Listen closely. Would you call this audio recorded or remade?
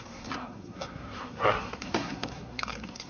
remade